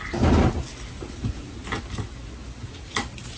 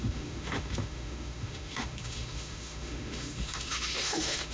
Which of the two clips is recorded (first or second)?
first